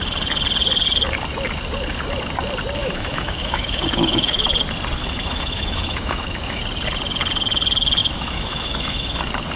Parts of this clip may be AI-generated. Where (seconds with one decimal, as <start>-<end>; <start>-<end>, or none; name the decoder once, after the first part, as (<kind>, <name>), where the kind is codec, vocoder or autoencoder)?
2.8-4.6 (autoencoder, DAC-VAE); 5.0-6.6; 8.0-9.2